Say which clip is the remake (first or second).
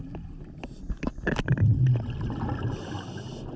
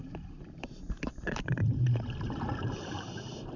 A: second